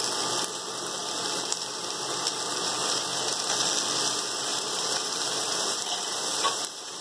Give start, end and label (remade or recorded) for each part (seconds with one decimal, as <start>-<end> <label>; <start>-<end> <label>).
0.0-4.5 recorded; 4.5-7.0 remade